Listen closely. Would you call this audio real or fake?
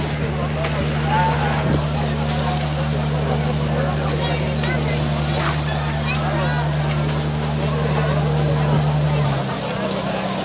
real